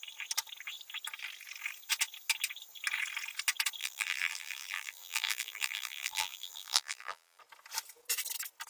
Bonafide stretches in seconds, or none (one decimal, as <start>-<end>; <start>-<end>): 0.0-3.8; 7.4-8.7